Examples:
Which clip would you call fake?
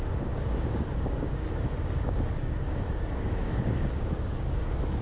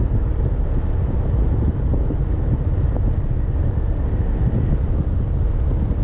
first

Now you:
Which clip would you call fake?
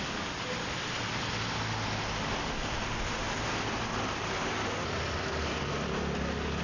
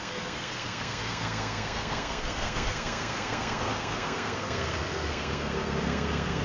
second